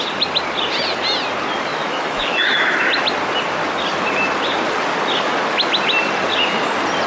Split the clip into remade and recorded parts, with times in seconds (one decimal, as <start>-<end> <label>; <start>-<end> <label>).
0.0-1.7 recorded; 1.7-2.8 remade; 2.8-7.1 recorded